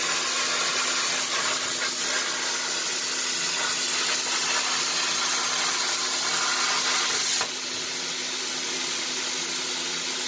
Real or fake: real